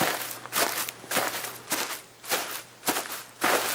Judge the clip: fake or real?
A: real